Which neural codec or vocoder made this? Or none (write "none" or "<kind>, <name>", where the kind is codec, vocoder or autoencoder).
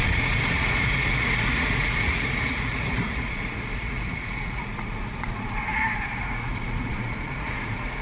vocoder, Vocos